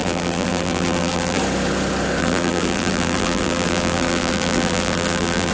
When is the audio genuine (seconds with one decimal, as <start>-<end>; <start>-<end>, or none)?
1.4-2.2